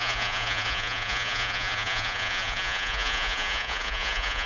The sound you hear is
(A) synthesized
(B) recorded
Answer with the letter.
A